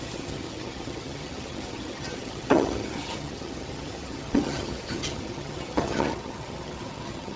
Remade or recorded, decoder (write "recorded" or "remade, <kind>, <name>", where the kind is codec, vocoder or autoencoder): remade, vocoder, HiFi-GAN